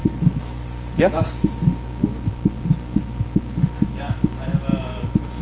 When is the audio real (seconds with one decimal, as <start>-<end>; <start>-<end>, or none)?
0.0-5.4